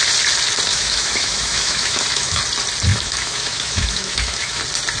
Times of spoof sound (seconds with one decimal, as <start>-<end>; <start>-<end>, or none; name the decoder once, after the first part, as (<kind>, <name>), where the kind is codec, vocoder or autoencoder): 0.7-2.4 (autoencoder, DAC-VAE); 2.9-4.6